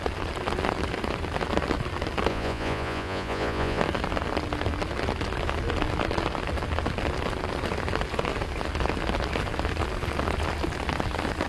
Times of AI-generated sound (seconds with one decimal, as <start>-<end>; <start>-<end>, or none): 2.3-3.8